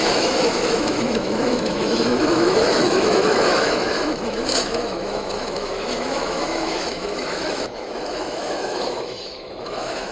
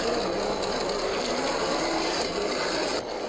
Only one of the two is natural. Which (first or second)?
second